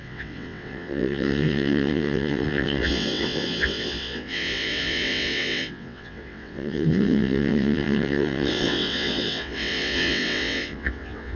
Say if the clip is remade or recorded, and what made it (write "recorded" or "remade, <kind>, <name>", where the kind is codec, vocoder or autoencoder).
remade, vocoder, WaveNeXt